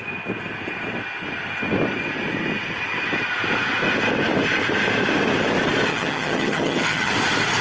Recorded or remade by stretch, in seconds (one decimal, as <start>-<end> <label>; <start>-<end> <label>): 0.0-5.9 recorded; 5.9-7.1 remade; 7.1-7.6 recorded